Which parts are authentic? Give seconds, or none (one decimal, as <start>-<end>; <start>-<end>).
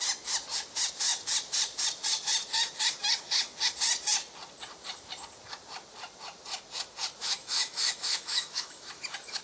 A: 0.0-7.2; 9.0-9.4